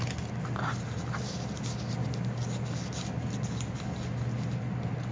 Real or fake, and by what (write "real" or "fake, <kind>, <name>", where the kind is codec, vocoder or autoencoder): real